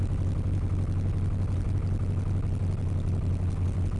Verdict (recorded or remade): recorded